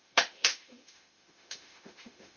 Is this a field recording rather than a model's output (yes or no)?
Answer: no